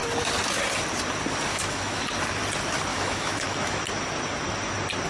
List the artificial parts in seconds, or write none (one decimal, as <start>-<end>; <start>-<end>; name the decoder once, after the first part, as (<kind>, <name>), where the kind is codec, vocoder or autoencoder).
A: 1.5-2.0 (autoencoder, DAC-VAE); 2.9-3.8